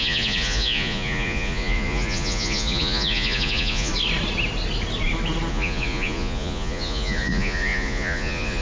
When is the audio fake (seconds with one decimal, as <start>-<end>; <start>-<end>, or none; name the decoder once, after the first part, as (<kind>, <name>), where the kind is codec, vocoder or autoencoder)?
0.0-3.9 (vocoder, Vocos); 5.5-8.6